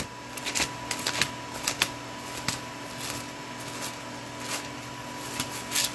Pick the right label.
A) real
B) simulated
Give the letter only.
A